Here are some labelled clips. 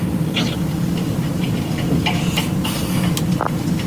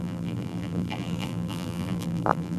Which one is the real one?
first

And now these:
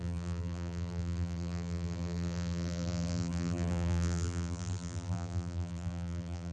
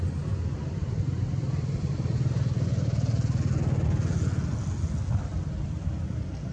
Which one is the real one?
second